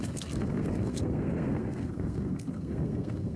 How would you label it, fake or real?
fake